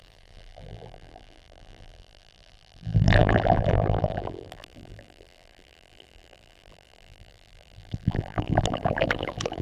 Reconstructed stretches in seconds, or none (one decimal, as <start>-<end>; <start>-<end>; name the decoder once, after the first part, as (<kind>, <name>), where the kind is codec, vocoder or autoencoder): 0.0-9.6 (vocoder, BigVGAN v2)